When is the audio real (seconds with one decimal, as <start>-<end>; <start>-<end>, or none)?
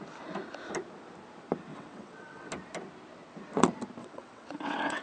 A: 0.0-1.7; 2.5-4.0